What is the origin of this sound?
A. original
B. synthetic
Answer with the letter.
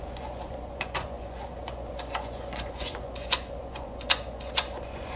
B